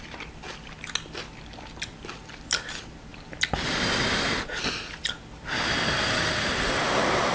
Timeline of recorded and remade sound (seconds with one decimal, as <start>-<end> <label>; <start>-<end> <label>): 0.0-7.3 recorded